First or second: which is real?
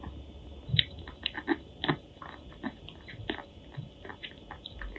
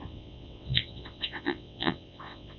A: first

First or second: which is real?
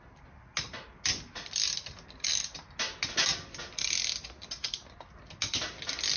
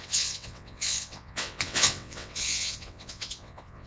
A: first